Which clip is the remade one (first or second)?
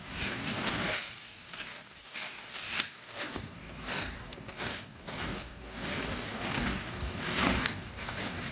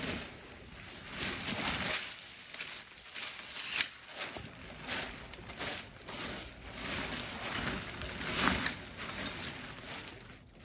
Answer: first